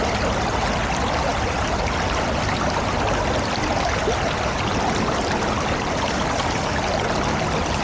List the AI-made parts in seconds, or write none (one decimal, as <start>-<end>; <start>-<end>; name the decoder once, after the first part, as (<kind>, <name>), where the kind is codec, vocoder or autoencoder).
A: none